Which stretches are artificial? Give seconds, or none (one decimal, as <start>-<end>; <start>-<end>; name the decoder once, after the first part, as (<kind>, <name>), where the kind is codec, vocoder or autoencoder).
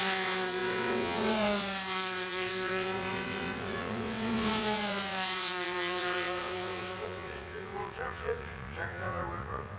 0.0-9.8 (vocoder, WaveNeXt)